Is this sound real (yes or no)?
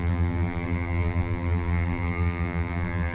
no